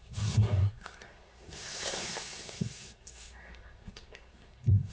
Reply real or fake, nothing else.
fake